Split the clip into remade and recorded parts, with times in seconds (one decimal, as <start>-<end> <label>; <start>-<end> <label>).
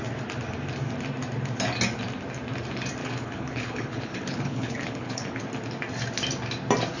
0.0-3.0 recorded; 3.0-5.4 remade; 5.4-7.0 recorded